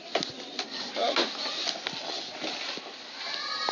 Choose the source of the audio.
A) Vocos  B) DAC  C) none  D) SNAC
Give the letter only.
C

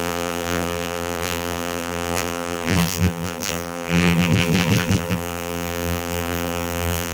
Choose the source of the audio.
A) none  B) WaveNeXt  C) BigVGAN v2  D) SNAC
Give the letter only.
C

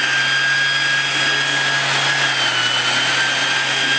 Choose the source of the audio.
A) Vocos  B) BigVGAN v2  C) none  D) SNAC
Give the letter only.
C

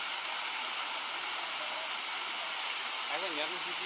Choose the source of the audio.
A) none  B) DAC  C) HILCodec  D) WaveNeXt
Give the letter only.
A